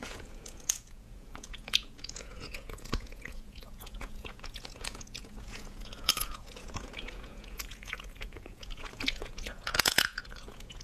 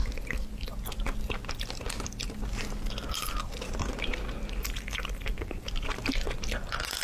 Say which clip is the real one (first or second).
second